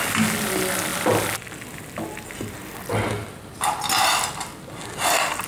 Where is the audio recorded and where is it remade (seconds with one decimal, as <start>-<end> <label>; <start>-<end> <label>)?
0.0-5.5 recorded